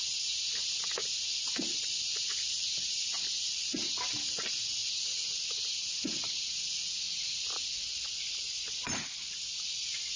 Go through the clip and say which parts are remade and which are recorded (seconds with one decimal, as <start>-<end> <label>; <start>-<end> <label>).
0.0-10.2 recorded